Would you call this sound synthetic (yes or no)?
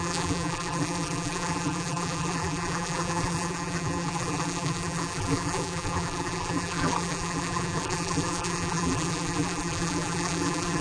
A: yes